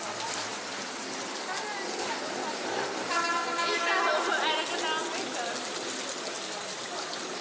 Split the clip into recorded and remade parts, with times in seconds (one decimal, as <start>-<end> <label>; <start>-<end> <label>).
0.0-7.4 recorded